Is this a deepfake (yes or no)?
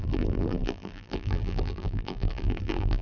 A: yes